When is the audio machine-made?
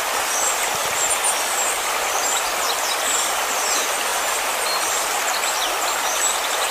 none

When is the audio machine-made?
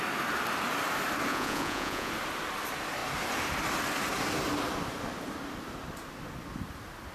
1.3-2.1 (vocoder, Vocos)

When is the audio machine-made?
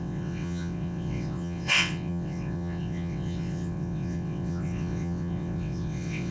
0.0-6.3 (vocoder, WaveNeXt)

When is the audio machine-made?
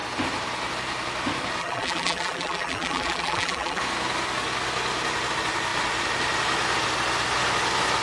1.6-3.8 (vocoder, BigVGAN v2)